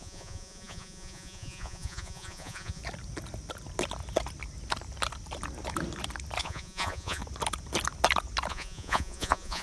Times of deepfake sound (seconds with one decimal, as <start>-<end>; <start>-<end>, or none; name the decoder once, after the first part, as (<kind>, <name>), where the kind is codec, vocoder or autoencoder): 0.0-2.8 (vocoder, Vocos); 6.4-7.2; 8.5-9.6